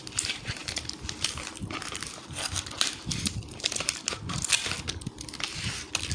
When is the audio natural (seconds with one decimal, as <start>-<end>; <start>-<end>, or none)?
0.0-6.1